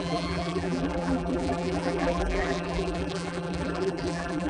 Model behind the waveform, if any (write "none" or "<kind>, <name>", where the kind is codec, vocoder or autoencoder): vocoder, BigVGAN v2